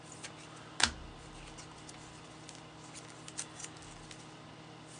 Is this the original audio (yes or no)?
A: yes